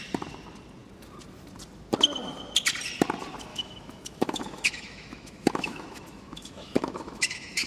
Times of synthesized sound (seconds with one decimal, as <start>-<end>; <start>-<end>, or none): 3.5-7.7